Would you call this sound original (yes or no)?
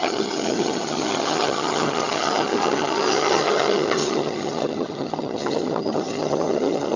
no